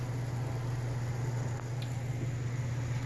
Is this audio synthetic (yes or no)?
no